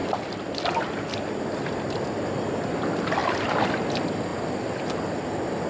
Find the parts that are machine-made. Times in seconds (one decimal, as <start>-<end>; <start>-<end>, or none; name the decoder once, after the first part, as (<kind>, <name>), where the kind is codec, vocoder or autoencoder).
0.0-1.7 (vocoder, BigVGAN v2); 4.3-5.7